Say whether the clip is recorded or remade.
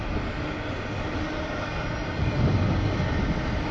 recorded